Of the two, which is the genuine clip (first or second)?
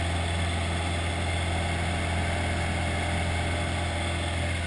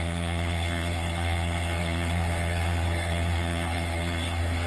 first